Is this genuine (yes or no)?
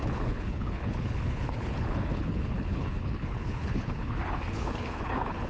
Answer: no